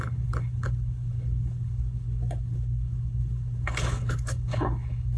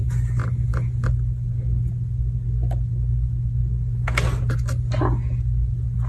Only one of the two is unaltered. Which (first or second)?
second